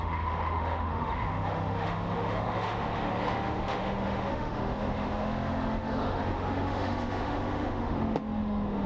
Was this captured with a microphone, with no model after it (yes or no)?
no